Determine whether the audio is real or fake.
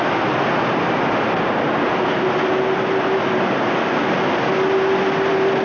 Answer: real